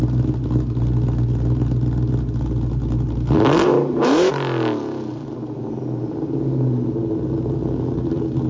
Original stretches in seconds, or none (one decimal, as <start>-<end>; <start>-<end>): 0.0-3.7; 4.3-8.5